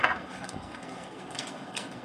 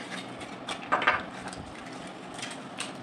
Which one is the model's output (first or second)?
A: first